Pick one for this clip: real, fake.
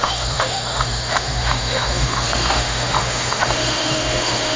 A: fake